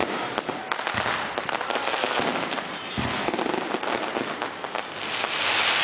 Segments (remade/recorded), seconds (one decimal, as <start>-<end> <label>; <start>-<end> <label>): 0.0-1.1 remade; 1.1-2.3 recorded; 2.3-2.9 remade; 2.9-5.8 recorded